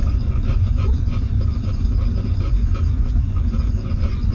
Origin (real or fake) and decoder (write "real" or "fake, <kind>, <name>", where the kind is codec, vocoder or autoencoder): fake, vocoder, Vocos